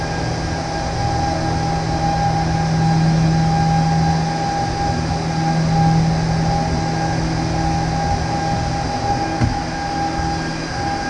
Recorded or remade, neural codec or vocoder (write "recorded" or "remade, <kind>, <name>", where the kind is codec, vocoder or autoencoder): recorded